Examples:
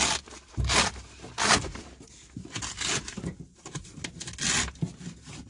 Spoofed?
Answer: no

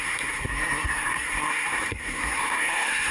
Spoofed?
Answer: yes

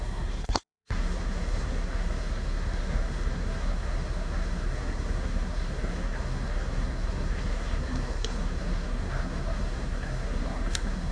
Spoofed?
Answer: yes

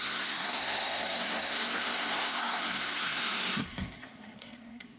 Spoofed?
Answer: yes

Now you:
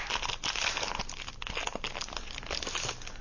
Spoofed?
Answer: no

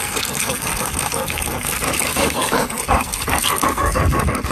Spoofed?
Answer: yes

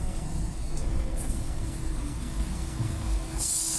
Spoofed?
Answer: yes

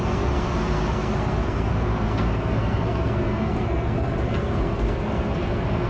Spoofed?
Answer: yes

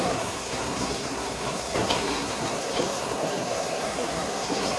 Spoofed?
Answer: yes